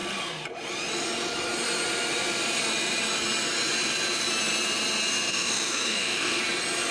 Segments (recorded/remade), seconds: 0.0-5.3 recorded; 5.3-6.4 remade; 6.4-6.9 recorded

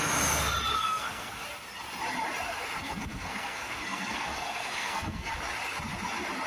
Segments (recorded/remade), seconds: 0.0-0.7 recorded; 0.7-1.4 remade; 1.4-2.8 recorded; 2.8-5.3 remade; 5.3-6.5 recorded

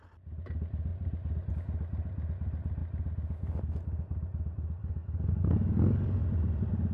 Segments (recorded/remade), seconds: 0.0-4.8 recorded; 4.8-6.2 remade; 6.2-6.9 recorded

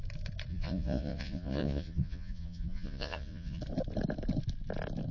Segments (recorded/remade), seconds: 0.0-0.5 recorded; 0.5-3.6 remade; 3.6-5.1 recorded

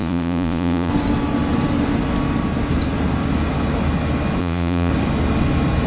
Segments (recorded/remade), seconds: 0.0-0.9 remade; 0.9-4.4 recorded; 4.4-4.9 remade; 4.9-5.9 recorded

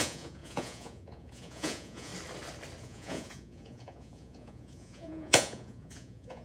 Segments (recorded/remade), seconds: 0.0-2.1 remade; 2.1-2.8 recorded; 2.8-6.4 remade